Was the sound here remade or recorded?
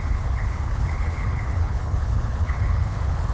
remade